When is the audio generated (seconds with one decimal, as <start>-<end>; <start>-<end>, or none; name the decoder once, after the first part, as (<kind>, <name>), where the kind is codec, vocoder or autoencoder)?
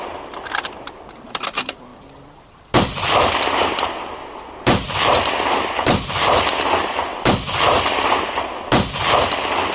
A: none